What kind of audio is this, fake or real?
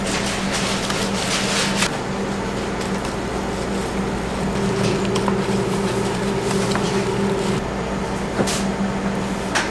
real